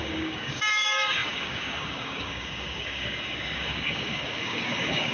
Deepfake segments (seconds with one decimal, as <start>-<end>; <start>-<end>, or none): 0.0-5.1